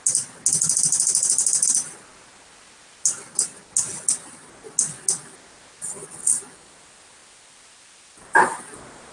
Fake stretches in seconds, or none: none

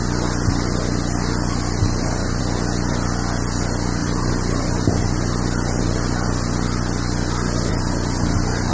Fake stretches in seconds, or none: 1.8-2.4 (vocoder, BigVGAN v2); 4.0-5.0; 7.7-8.7

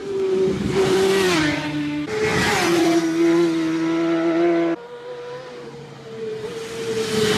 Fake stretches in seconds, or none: 0.0-1.6 (vocoder, BigVGAN v2); 2.3-6.3